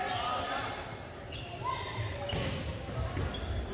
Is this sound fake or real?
real